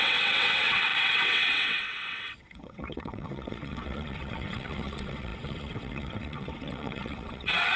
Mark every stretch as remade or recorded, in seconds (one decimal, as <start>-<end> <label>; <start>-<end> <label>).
0.0-7.8 remade